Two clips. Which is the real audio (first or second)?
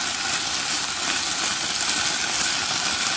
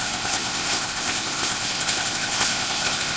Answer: first